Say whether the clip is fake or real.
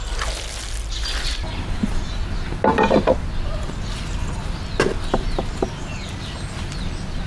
real